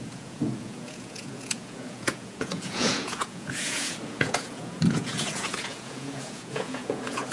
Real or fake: fake